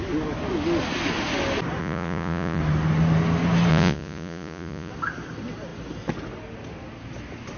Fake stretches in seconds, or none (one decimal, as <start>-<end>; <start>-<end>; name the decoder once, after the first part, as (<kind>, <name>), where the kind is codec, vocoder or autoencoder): 1.8-2.6 (vocoder, Vocos); 3.7-4.9